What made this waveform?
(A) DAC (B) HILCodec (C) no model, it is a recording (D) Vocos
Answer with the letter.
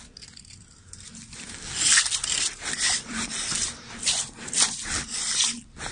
C